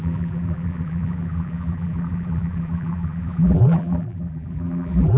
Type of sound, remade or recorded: remade